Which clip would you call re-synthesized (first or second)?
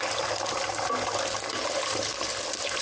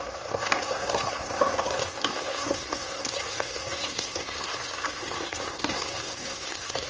second